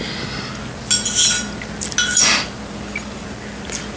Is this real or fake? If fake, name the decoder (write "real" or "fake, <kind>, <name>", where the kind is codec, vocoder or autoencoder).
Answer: real